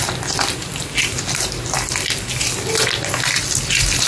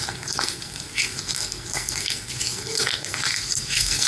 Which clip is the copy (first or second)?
second